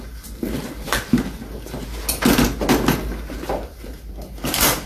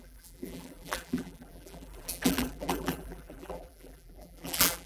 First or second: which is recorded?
first